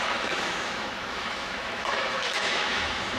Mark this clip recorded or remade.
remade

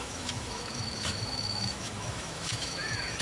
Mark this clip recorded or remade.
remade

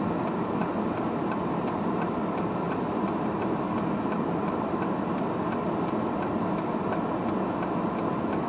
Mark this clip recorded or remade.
recorded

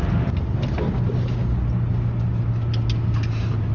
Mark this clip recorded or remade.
recorded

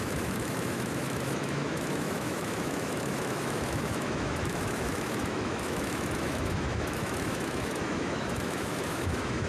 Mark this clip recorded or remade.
remade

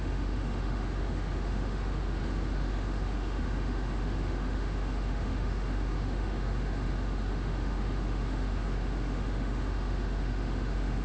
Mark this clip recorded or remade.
remade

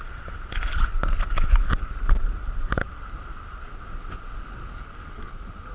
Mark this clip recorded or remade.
recorded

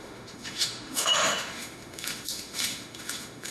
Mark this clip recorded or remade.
remade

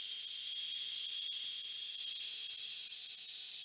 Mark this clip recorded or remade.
recorded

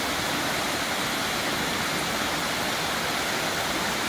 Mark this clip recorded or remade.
recorded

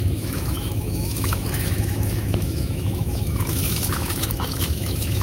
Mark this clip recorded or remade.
remade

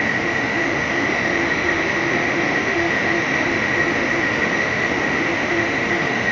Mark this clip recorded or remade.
remade